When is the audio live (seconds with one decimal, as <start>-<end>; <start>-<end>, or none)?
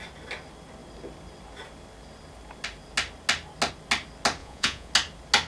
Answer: 0.0-4.4; 4.9-5.5